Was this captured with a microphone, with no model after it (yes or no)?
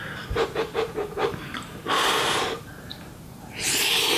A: no